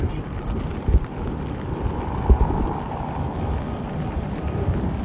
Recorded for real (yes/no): yes